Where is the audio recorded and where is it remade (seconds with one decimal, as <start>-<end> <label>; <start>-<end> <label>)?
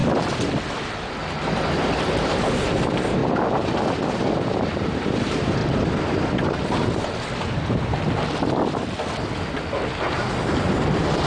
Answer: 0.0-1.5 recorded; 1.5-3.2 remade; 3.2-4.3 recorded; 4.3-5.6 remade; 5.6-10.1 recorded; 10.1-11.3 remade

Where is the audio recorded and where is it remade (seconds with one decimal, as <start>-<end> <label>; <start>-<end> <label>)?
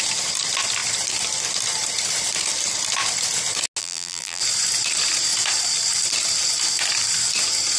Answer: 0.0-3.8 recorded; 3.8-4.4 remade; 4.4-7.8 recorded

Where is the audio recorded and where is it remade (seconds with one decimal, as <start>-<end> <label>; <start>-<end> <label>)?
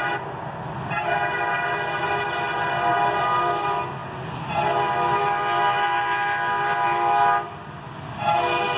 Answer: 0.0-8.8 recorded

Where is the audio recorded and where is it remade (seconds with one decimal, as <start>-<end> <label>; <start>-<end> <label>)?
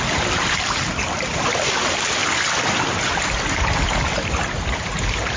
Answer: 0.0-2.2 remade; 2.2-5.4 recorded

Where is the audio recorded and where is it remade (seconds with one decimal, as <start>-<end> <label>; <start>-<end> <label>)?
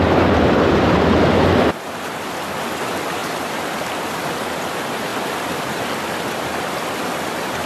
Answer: 0.0-3.2 remade; 3.2-4.0 recorded; 4.0-7.7 remade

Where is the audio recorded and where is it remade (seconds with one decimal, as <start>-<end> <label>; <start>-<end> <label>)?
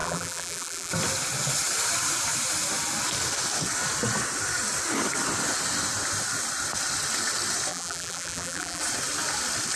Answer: 0.0-0.9 remade; 0.9-7.7 recorded; 7.7-8.8 remade; 8.8-9.8 recorded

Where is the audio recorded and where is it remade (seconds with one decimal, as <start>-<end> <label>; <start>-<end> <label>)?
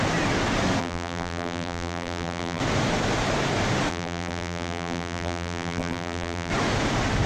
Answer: 0.0-0.8 recorded; 0.8-2.6 remade; 2.6-3.9 recorded; 3.9-6.5 remade; 6.5-7.3 recorded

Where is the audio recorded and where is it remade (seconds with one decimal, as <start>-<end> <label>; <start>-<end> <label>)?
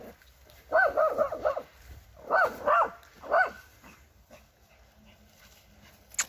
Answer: 0.0-6.3 recorded